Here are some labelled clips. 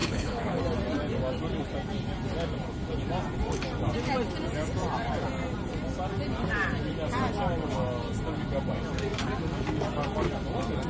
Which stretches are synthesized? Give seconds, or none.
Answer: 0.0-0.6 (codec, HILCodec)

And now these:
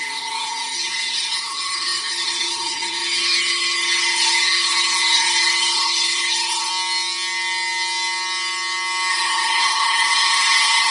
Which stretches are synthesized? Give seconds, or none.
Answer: 0.0-6.7 (codec, HILCodec); 9.1-10.9